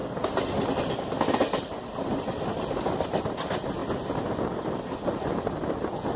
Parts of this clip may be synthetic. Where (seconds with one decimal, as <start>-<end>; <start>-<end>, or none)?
none